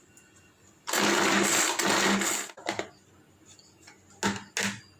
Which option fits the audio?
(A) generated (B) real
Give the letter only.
B